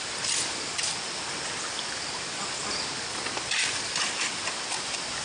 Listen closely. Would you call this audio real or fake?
real